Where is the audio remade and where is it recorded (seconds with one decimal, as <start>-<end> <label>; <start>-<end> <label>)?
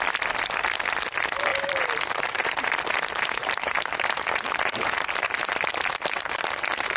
0.0-1.5 recorded; 1.5-2.7 remade; 2.7-3.4 recorded; 3.4-5.7 remade; 5.7-7.0 recorded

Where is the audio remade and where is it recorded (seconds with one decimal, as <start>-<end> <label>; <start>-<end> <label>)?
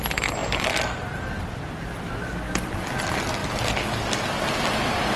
0.0-5.2 recorded